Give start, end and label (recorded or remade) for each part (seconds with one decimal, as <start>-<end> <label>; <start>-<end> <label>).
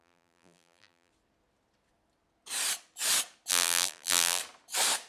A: 0.0-1.1 remade; 1.1-3.5 recorded; 3.5-4.4 remade; 4.4-5.1 recorded